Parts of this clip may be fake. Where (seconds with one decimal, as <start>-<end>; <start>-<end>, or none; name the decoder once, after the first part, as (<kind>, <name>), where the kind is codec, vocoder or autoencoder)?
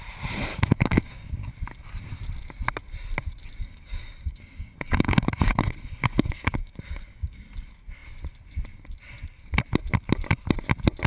0.5-1.5 (codec, DAC); 3.6-7.4